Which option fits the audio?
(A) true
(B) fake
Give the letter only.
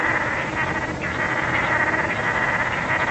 A